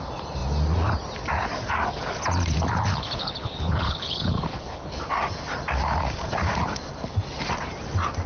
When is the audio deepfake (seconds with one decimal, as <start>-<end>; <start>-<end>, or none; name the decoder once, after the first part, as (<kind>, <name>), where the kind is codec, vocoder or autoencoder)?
2.9-5.0 (codec, HILCodec)